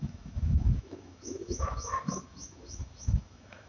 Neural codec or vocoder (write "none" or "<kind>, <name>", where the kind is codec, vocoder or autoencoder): autoencoder, DAC-VAE